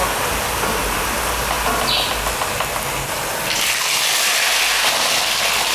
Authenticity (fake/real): real